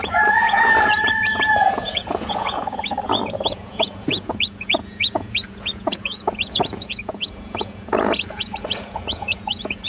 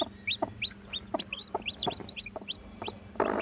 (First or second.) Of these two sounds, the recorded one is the second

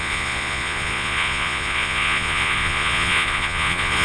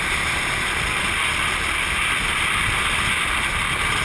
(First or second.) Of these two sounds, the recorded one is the second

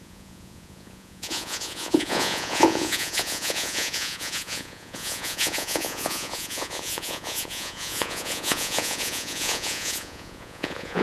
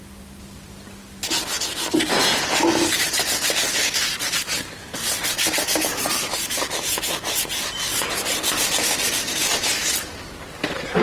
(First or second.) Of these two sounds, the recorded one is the second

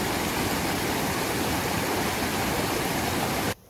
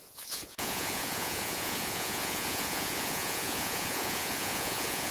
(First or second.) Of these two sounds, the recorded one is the first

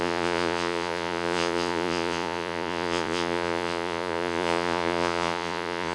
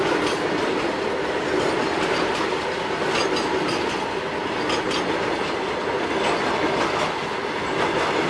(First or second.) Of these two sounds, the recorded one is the second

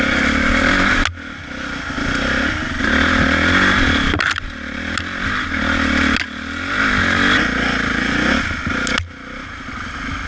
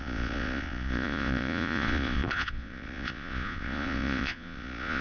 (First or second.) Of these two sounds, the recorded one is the first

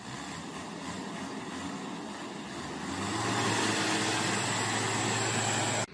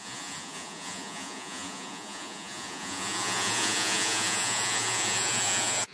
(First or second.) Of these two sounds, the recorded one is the first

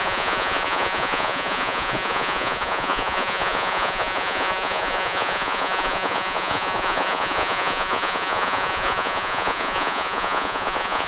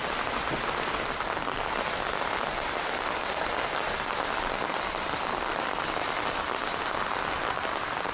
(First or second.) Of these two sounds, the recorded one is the second